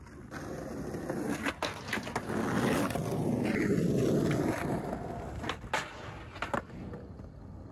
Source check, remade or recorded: recorded